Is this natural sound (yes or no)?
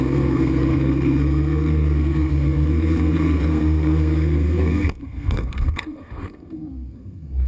no